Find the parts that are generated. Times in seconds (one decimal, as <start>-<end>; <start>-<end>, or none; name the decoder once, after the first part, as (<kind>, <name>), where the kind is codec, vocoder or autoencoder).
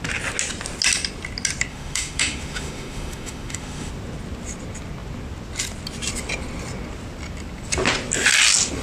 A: 1.7-3.9 (autoencoder, DAC-VAE)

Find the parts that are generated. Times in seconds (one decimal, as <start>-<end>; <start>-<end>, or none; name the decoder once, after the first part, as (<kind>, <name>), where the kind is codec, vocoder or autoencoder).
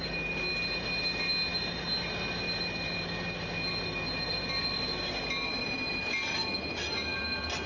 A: none